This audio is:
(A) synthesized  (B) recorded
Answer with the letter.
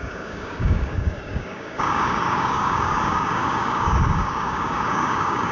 A